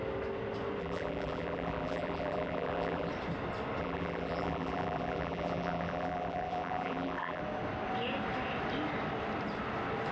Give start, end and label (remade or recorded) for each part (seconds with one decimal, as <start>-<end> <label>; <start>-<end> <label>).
0.0-0.8 recorded; 0.8-3.1 remade; 3.1-3.8 recorded; 3.8-7.4 remade; 7.4-10.1 recorded